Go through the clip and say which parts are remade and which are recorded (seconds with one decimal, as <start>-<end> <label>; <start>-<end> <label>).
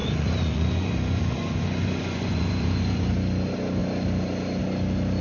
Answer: 0.0-3.1 remade; 3.1-5.2 recorded